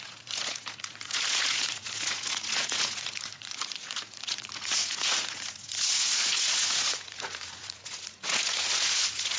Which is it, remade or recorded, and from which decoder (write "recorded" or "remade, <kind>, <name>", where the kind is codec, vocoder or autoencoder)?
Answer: remade, vocoder, Vocos